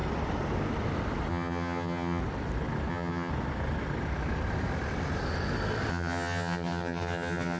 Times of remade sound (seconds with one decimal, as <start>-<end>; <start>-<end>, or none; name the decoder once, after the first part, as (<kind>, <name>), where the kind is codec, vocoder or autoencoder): 1.3-2.2 (vocoder, HiFi-GAN); 2.9-3.3; 5.9-7.6